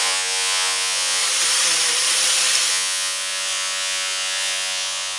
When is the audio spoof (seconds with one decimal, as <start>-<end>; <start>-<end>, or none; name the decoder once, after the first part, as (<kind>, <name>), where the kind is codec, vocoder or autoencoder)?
0.0-1.2 (vocoder, Vocos); 2.7-5.2